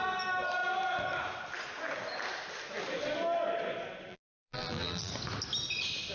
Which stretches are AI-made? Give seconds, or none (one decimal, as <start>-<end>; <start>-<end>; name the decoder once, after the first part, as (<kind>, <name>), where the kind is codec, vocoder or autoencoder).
4.1-5.1 (vocoder, BigVGAN v2)